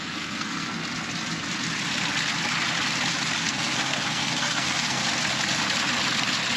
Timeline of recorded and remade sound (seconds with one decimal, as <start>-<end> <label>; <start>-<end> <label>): 0.0-0.8 remade; 0.8-3.4 recorded; 3.4-5.0 remade; 5.0-6.6 recorded